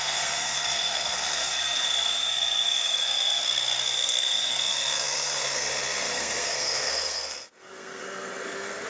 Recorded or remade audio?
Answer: remade